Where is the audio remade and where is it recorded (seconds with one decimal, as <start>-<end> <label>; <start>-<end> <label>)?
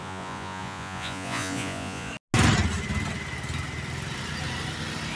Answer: 0.0-2.1 remade; 2.1-5.2 recorded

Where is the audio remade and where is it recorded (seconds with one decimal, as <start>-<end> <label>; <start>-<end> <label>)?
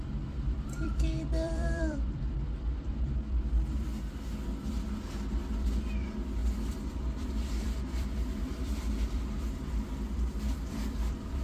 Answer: 0.0-3.9 remade; 3.9-5.5 recorded; 5.5-11.4 remade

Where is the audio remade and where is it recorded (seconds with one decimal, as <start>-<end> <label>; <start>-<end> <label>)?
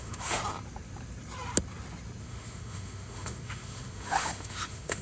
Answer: 0.0-0.4 remade; 0.4-2.2 recorded; 2.2-5.0 remade